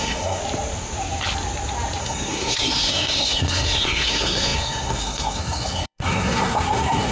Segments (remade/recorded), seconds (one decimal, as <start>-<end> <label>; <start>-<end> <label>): 0.0-0.4 remade; 0.4-2.0 recorded; 2.0-7.1 remade